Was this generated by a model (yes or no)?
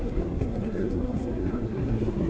yes